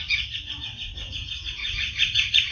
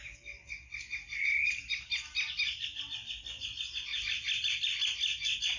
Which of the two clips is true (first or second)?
second